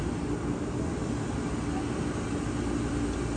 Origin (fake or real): real